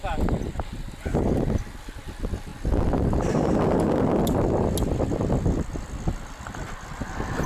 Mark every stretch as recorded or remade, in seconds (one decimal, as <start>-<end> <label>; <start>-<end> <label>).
0.0-7.5 recorded